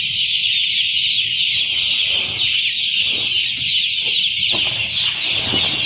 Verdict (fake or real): real